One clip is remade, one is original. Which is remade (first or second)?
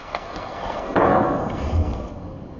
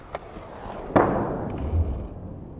first